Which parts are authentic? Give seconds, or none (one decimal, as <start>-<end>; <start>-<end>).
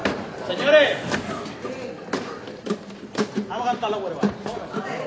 0.0-5.1